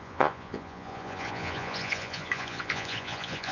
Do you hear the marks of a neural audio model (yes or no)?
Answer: yes